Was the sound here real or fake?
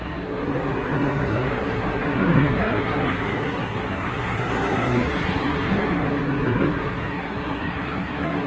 fake